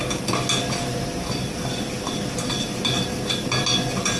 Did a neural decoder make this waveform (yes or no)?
no